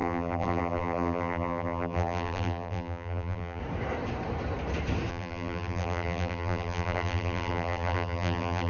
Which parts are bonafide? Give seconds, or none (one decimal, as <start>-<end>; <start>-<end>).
3.6-5.1